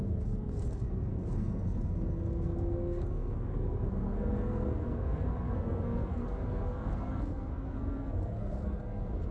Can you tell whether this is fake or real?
fake